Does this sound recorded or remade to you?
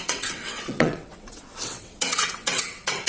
remade